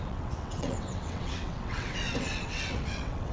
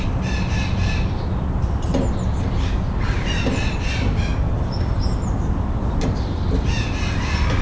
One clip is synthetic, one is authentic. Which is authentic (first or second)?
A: second